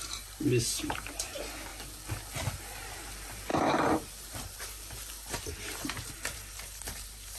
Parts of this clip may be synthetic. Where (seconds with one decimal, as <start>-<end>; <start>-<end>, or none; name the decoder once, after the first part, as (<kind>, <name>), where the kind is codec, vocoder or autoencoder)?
0.0-1.7 (vocoder, BigVGAN v2); 2.8-7.4